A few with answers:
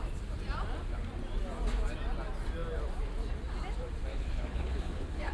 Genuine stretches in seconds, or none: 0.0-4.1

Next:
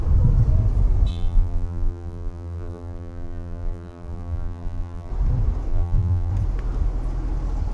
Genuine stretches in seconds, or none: 0.0-1.1; 5.1-5.7; 6.3-7.7

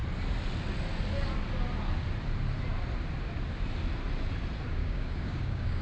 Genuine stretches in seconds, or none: 0.0-4.8

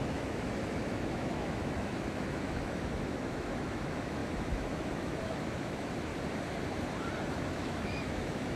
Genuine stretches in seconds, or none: 6.1-7.2

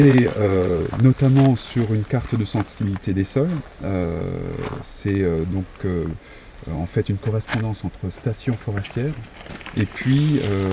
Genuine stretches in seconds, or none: 0.8-10.7

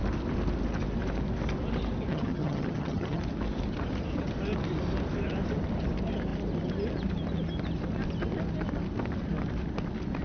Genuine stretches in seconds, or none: 0.0-2.1; 3.2-10.2